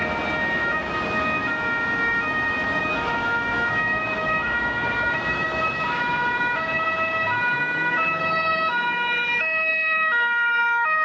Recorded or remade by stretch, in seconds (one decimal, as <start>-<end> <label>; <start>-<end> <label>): 0.0-0.5 recorded; 0.5-11.0 remade